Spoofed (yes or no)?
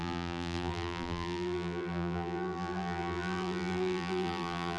yes